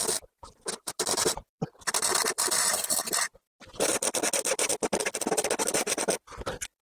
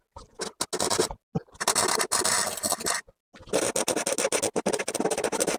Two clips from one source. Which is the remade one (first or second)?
first